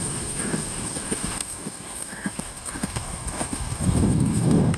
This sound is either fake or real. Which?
fake